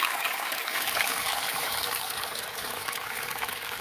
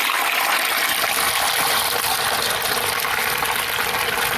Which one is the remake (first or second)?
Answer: first